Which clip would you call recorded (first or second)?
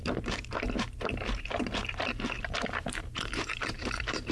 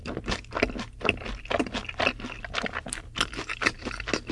second